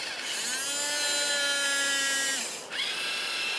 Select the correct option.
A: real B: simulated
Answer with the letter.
A